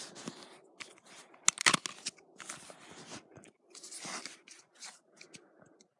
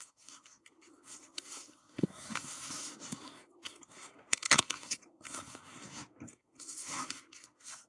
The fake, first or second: second